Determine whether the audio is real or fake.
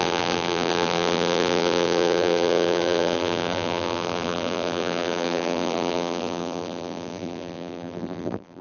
fake